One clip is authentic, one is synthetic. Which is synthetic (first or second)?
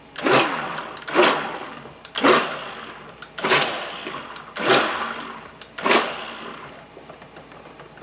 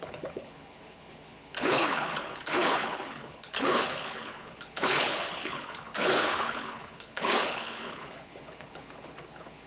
second